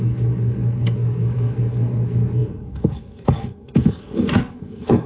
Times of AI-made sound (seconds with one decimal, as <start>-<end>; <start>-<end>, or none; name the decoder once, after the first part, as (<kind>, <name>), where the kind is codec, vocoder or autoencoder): 0.0-5.1 (codec, SNAC)